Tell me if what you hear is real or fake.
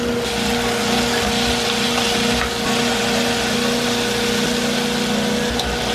real